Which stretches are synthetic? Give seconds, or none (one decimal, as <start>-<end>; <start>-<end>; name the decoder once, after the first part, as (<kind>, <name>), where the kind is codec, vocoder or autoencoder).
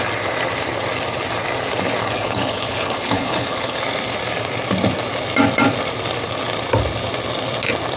2.0-3.8 (codec, HILCodec)